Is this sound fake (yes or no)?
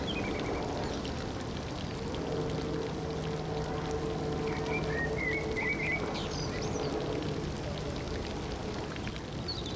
no